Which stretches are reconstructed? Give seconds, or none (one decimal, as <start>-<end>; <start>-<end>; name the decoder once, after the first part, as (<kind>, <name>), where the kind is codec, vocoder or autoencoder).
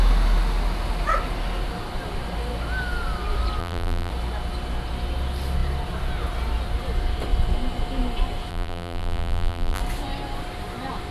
3.6-4.1 (vocoder, BigVGAN v2); 8.5-9.8